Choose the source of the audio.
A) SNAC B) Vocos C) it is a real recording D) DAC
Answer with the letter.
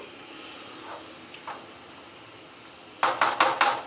C